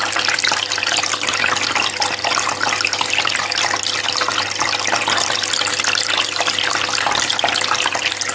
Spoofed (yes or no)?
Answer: no